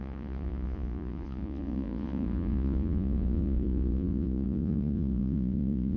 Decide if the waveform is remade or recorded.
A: remade